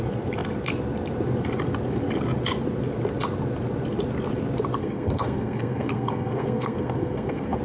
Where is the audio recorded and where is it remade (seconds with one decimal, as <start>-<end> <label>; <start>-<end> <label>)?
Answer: 0.0-4.8 recorded; 4.8-7.6 remade